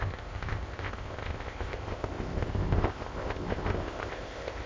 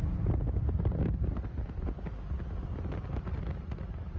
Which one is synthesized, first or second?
first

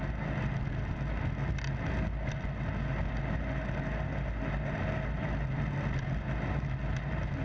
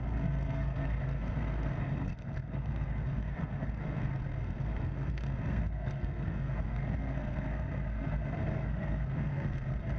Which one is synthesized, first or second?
second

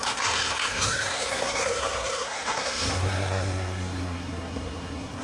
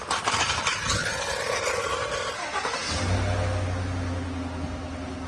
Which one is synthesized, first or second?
first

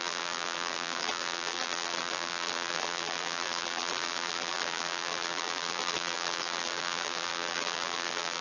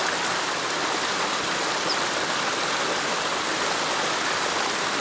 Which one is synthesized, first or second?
first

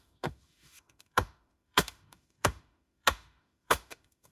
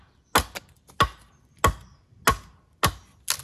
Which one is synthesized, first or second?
first